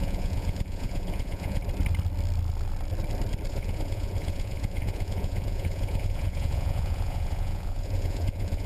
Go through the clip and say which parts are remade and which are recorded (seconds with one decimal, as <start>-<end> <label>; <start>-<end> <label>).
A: 0.0-1.6 remade; 1.6-3.5 recorded; 3.5-8.7 remade